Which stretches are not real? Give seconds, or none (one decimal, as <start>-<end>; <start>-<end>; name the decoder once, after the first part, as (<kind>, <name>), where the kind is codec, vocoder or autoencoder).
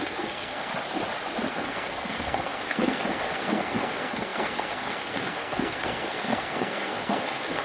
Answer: 0.0-0.7 (codec, SNAC); 1.5-7.6